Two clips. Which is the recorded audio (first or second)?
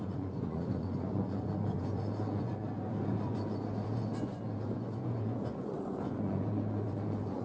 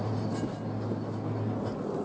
second